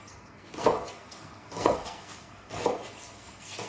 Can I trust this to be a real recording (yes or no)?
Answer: no